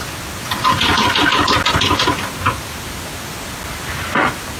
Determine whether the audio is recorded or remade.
recorded